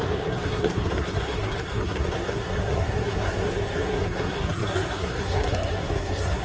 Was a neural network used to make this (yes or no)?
yes